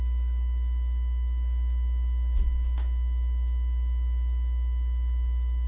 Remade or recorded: recorded